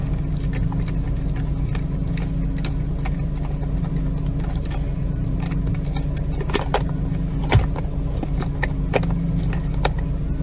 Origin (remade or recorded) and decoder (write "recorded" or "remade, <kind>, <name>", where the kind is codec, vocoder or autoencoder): recorded